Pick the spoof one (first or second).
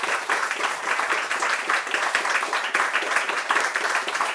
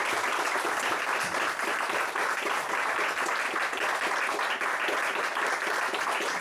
first